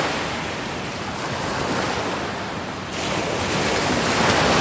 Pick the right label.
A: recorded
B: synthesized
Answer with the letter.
A